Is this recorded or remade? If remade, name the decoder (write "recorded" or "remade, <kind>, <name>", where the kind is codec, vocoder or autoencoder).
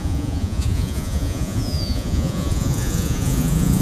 remade, vocoder, Vocos